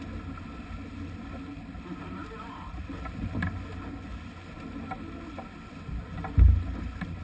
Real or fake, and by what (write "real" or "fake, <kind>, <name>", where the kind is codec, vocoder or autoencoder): real